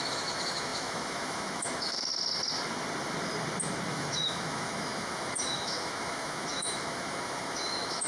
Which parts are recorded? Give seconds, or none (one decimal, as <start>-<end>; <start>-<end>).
2.1-3.9